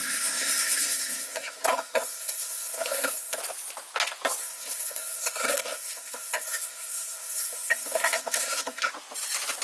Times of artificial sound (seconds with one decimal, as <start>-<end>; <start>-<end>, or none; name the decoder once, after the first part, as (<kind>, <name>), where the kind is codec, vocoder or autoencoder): 0.0-3.4 (codec, SNAC); 4.4-8.9